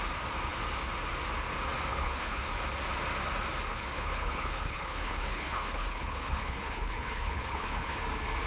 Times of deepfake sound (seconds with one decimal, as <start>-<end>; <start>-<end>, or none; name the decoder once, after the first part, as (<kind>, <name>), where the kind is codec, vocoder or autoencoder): 1.9-2.5 (codec, HILCodec); 3.7-8.0